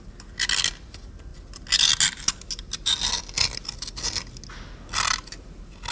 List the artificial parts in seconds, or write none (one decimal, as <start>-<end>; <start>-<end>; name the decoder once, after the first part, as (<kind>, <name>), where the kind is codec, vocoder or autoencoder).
none

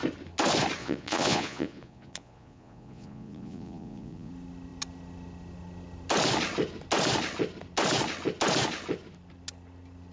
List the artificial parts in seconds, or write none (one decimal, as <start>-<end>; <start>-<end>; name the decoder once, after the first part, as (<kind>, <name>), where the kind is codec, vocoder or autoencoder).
0.8-4.3 (vocoder, Vocos)

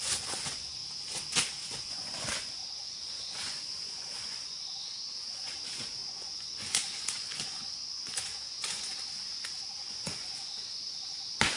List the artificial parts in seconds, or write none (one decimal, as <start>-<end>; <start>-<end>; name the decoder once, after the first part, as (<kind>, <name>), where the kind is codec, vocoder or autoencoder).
0.0-0.8 (vocoder, Vocos); 1.6-9.3; 9.8-11.6

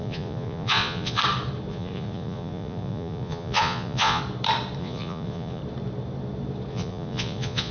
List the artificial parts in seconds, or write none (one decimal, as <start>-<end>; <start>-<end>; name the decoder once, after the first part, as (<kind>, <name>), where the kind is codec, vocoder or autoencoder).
0.0-1.2 (vocoder, Vocos); 1.7-4.2; 4.8-5.6; 6.7-7.7

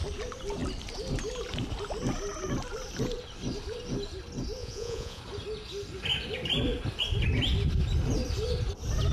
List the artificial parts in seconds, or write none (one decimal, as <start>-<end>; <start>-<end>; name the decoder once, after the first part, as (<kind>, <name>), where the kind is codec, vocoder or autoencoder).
4.6-5.2 (vocoder, Vocos)

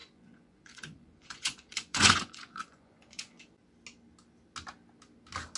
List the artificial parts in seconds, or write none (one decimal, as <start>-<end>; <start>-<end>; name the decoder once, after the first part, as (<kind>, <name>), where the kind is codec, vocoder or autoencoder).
0.0-3.4 (vocoder, Vocos)